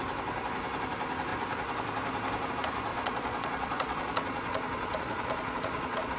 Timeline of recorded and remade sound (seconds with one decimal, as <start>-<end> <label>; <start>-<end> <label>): 0.0-2.9 recorded; 2.9-6.2 remade